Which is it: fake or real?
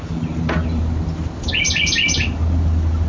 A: real